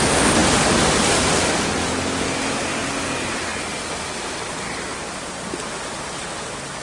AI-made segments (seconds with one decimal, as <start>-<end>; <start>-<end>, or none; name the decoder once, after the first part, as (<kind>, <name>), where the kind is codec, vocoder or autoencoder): none